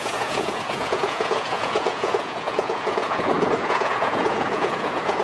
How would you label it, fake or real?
fake